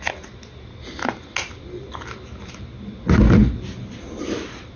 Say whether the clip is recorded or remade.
recorded